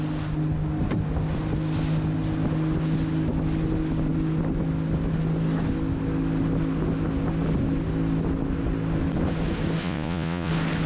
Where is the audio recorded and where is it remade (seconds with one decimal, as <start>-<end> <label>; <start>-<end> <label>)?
0.0-9.8 recorded; 9.8-10.5 remade; 10.5-10.9 recorded